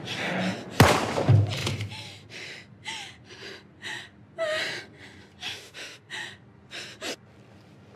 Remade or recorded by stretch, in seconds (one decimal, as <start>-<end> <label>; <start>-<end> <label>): 0.0-5.5 recorded; 5.5-6.1 remade; 6.1-8.0 recorded

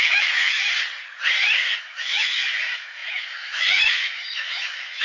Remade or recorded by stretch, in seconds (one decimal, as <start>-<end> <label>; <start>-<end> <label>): 0.0-0.6 remade; 0.6-1.8 recorded; 1.8-5.0 remade